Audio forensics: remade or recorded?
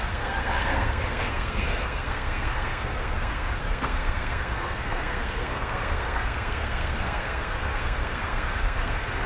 remade